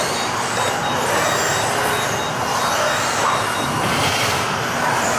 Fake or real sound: real